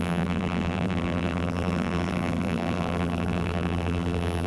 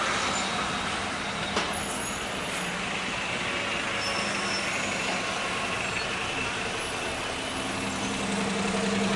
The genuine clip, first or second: second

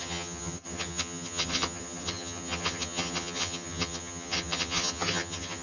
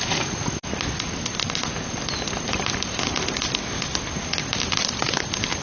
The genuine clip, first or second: second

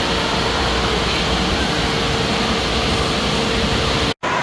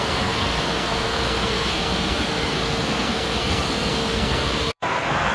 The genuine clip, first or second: first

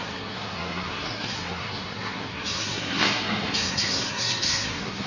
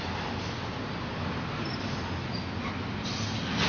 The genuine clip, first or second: second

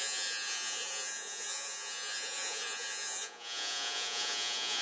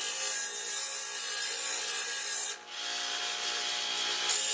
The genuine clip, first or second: second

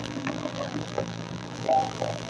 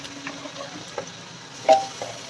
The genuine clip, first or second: second